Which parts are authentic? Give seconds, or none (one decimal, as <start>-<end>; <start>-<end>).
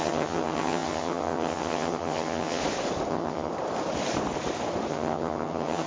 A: 2.6-3.1; 3.5-4.9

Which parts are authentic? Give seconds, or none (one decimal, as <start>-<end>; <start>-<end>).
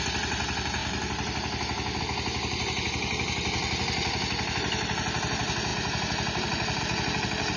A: 0.0-7.6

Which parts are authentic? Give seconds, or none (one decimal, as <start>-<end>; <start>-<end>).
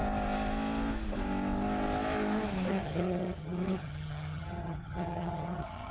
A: 0.0-2.7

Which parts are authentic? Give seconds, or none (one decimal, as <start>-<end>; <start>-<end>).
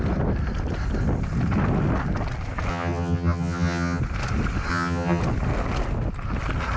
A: 0.0-2.7; 4.0-4.7; 5.2-6.8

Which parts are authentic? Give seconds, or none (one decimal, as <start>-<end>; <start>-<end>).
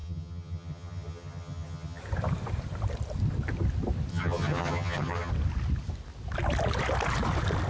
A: 2.0-4.1; 5.3-7.7